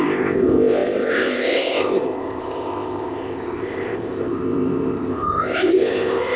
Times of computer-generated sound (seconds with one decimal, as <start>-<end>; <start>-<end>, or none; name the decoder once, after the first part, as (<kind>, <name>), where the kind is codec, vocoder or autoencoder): 0.0-6.4 (codec, ZipCodec)